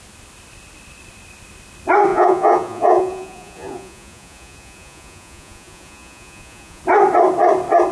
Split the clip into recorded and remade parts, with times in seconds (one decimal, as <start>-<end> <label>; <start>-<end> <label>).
0.0-2.1 recorded; 2.1-6.8 remade; 6.8-7.9 recorded